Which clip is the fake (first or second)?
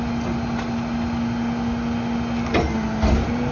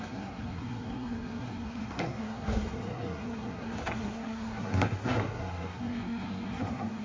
second